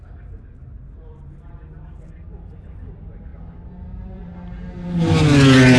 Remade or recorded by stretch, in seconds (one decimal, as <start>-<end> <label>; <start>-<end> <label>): 0.0-5.8 recorded